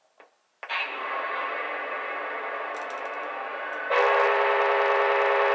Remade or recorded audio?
recorded